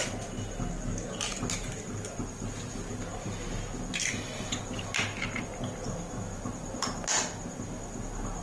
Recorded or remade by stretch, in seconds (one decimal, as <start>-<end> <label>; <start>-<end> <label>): 0.0-8.4 recorded

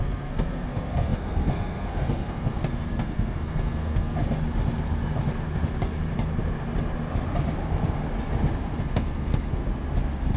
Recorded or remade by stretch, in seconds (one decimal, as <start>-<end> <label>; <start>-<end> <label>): 0.0-4.2 remade; 4.2-8.8 recorded; 8.8-9.6 remade; 9.6-10.4 recorded